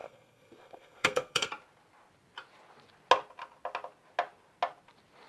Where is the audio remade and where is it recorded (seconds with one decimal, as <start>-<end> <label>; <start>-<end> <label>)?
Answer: 0.0-1.5 remade; 1.5-5.3 recorded